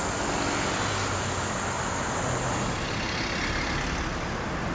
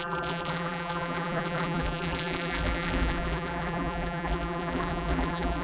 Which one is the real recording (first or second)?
first